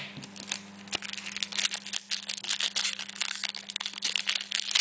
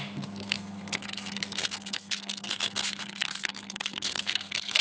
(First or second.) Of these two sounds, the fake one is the second